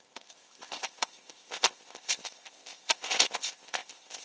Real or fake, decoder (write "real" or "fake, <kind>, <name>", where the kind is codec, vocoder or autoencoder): fake, codec, ZipCodec